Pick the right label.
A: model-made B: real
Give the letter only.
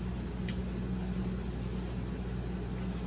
B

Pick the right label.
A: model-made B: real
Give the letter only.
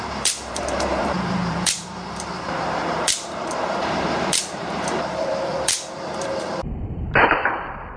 A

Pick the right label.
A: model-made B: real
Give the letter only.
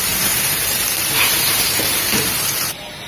A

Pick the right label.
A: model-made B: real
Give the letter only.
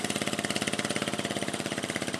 A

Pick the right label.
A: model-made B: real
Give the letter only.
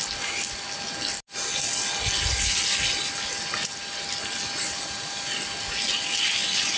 B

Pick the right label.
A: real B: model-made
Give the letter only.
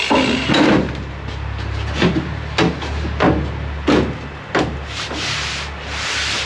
A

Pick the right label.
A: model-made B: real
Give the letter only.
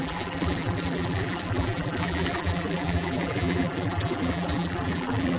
A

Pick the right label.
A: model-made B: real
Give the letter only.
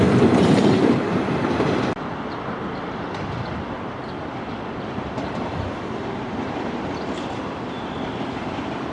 A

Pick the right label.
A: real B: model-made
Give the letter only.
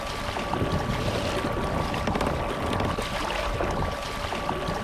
A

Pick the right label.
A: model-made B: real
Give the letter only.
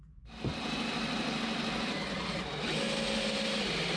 B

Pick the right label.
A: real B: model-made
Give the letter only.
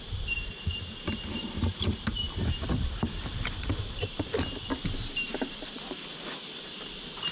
B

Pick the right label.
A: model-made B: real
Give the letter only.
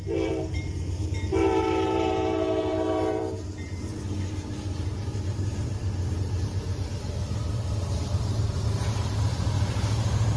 A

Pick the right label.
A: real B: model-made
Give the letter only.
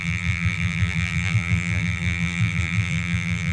B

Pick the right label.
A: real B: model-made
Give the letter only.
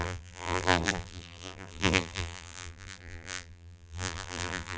B